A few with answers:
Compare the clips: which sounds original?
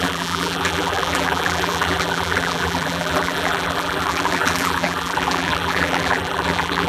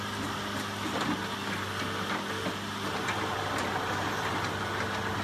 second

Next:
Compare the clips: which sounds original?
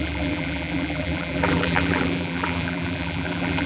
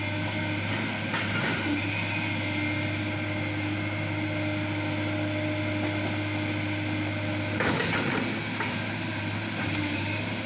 second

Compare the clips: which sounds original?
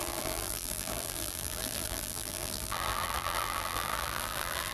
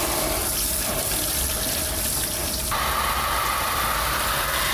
second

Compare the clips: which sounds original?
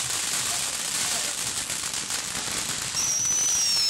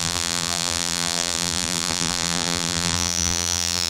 first